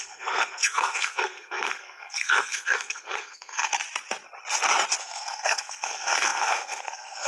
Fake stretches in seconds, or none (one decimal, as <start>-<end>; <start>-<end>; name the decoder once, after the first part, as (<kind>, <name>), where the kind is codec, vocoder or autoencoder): 0.0-3.7 (codec, SNAC); 5.0-7.3